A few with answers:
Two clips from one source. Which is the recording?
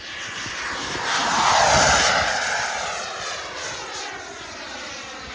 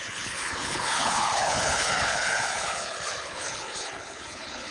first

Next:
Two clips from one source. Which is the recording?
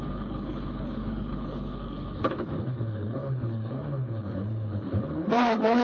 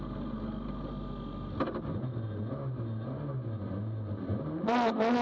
second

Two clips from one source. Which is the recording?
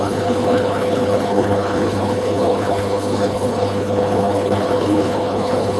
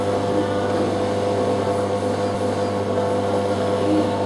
second